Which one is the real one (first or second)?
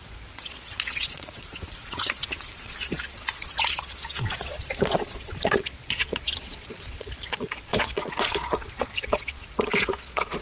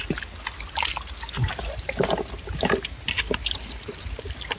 second